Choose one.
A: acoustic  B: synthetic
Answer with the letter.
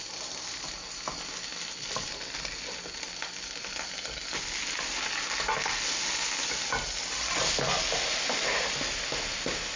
A